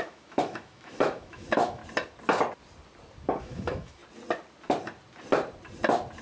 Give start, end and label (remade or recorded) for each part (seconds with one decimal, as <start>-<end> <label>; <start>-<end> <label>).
0.0-1.8 remade; 1.8-3.4 recorded; 3.4-4.0 remade; 4.0-6.2 recorded